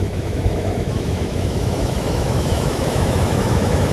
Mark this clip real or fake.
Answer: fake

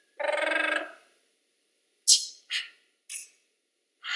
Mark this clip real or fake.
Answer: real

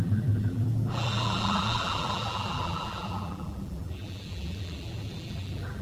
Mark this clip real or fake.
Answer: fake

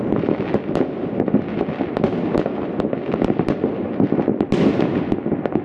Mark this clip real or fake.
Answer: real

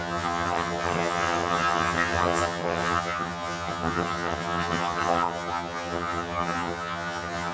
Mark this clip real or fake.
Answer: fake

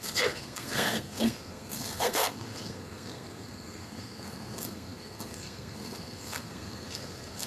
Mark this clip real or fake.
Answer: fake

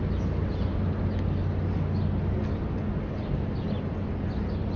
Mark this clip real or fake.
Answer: real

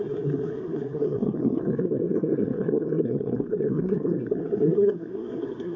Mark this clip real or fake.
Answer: fake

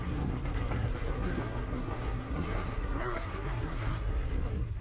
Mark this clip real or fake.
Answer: fake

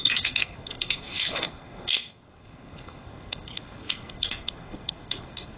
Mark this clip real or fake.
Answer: fake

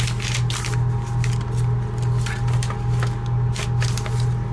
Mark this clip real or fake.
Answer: real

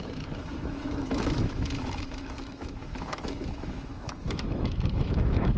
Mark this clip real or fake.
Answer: fake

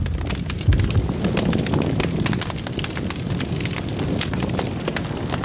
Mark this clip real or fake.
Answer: real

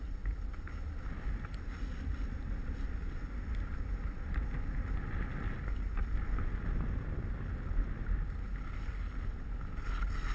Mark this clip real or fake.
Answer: real